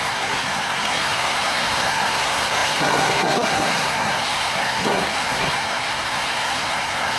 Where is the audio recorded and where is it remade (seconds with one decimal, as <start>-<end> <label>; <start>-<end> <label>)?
0.0-7.2 remade